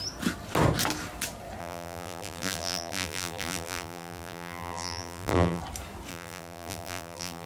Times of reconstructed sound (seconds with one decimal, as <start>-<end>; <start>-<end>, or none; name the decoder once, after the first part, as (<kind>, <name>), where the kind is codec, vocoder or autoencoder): 1.6-5.6 (vocoder, BigVGAN v2); 6.1-7.5